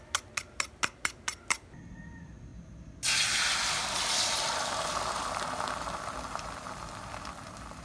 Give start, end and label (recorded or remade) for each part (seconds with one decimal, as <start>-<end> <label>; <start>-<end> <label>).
0.0-7.8 recorded